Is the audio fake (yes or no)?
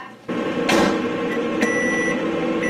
no